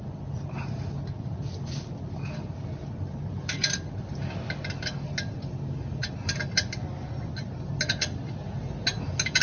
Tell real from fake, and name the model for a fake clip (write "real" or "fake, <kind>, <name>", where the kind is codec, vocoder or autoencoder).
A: real